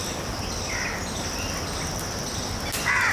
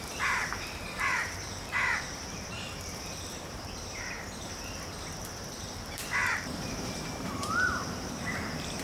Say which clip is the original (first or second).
first